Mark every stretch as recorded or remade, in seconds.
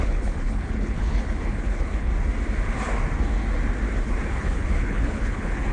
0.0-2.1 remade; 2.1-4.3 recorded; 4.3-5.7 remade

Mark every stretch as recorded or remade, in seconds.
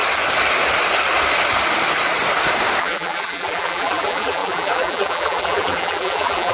0.0-2.8 recorded; 2.8-6.5 remade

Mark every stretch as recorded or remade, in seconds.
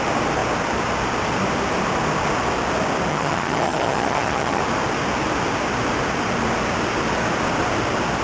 0.0-3.1 recorded; 3.1-4.6 remade; 4.6-8.2 recorded